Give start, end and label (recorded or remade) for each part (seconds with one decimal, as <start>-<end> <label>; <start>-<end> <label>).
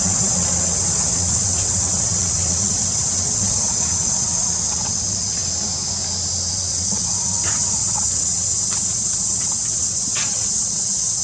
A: 0.0-5.4 remade; 5.4-6.5 recorded; 6.5-11.2 remade